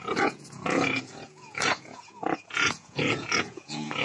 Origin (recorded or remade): remade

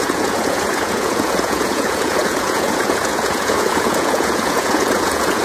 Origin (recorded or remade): remade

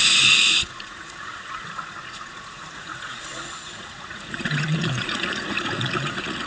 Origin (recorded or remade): remade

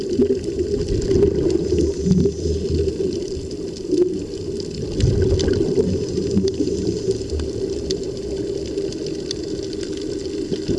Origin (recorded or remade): recorded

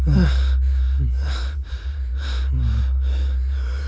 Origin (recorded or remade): recorded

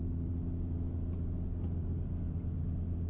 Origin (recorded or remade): recorded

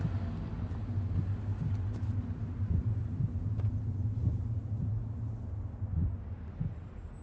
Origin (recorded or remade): recorded